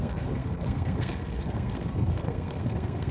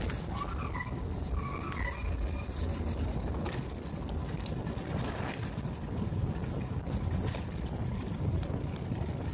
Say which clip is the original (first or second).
second